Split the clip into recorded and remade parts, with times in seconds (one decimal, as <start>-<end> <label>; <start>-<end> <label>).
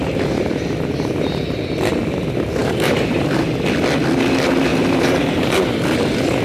0.0-2.6 recorded; 2.6-3.5 remade; 3.5-4.7 recorded; 4.7-5.6 remade; 5.6-6.4 recorded